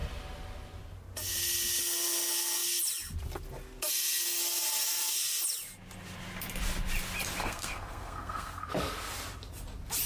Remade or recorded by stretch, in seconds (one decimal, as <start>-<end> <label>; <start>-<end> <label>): 0.0-7.4 recorded; 7.4-8.7 remade; 8.7-10.1 recorded